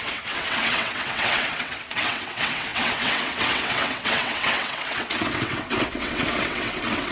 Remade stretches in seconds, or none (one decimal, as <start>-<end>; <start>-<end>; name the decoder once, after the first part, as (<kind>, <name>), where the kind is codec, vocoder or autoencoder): 0.0-7.1 (vocoder, WaveNeXt)